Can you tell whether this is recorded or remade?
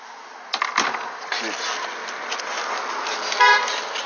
recorded